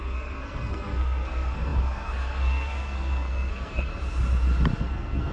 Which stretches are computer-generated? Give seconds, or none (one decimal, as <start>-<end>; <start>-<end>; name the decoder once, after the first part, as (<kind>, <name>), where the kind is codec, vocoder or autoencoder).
0.0-3.9 (codec, SNAC); 4.8-5.3